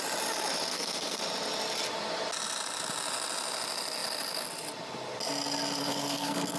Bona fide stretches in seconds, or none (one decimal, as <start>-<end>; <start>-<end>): 0.0-0.7; 1.2-5.8

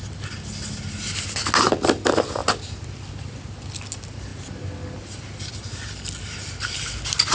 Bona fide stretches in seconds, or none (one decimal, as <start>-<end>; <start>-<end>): 0.0-7.3

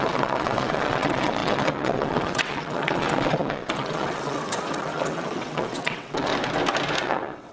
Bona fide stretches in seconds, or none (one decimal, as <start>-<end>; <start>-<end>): 6.3-7.0

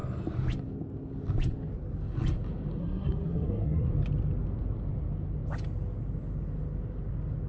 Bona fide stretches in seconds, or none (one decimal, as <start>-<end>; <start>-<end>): 0.0-2.8; 3.9-7.5

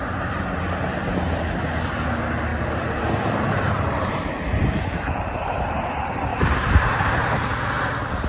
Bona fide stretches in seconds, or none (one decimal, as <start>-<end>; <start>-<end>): 0.0-2.5; 4.2-6.3; 7.3-8.3

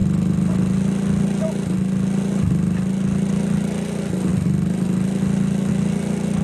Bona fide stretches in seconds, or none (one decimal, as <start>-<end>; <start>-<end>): 0.0-6.4

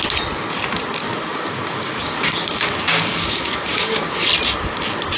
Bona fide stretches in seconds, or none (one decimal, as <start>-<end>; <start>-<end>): 0.0-1.3; 4.1-5.2

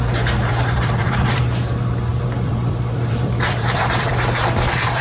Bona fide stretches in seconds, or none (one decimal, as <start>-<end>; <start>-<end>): 0.0-0.4; 1.4-2.1